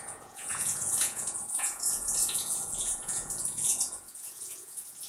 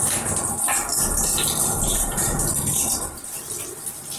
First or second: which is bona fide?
second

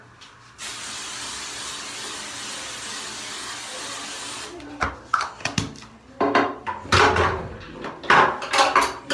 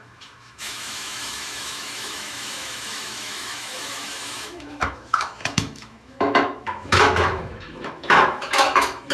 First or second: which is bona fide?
first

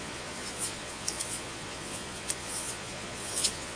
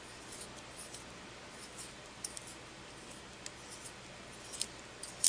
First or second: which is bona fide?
second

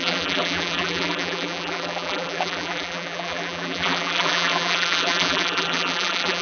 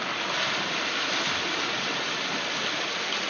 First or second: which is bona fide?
second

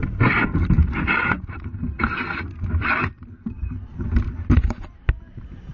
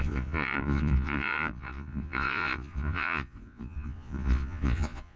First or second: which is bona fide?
first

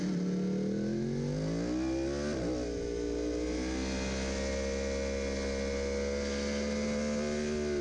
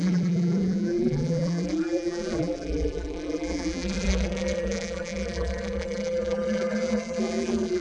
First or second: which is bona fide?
first